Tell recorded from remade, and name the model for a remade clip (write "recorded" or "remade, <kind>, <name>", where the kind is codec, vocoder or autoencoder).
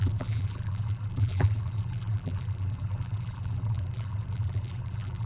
remade, vocoder, BigVGAN v2